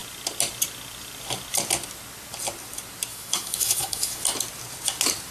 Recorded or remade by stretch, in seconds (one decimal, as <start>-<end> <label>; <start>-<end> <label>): 0.0-3.1 recorded; 3.1-4.2 remade; 4.2-5.3 recorded

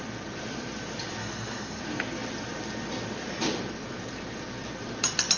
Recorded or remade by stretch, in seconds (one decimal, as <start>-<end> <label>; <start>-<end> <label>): 0.0-1.2 recorded; 1.2-1.8 remade; 1.8-5.4 recorded

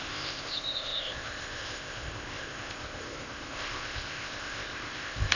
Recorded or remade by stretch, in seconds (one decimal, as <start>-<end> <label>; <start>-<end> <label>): 0.0-5.3 remade

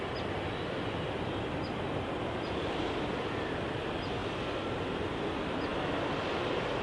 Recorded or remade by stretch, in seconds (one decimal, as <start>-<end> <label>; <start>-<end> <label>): 0.0-6.8 recorded

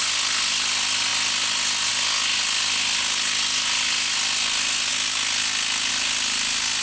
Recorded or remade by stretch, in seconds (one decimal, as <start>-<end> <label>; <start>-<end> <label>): 0.0-6.8 recorded

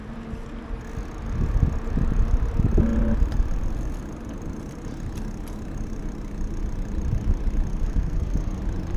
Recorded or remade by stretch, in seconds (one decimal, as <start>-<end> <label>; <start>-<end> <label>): 0.0-7.7 recorded; 7.7-8.6 remade; 8.6-9.0 recorded